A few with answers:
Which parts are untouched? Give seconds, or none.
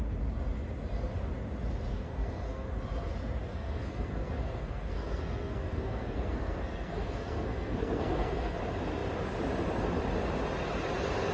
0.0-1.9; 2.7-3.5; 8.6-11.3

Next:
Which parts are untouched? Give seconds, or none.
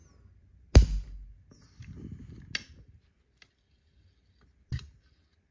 0.0-5.5